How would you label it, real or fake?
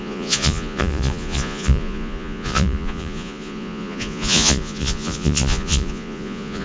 fake